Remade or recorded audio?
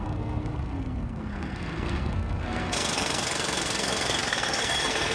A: remade